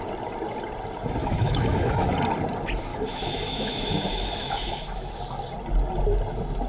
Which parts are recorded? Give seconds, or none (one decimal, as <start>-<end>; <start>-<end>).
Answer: 0.0-1.2; 2.1-2.9; 5.2-6.7